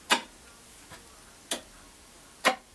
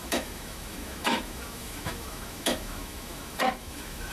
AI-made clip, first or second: second